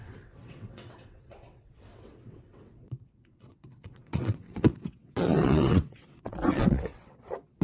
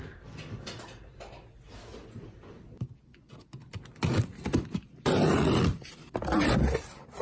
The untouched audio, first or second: second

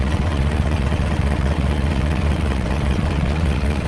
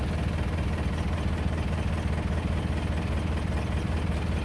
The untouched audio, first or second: second